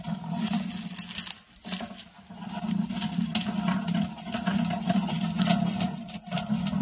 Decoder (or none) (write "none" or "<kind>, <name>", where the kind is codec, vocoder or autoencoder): none